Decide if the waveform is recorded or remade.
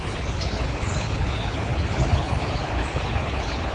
remade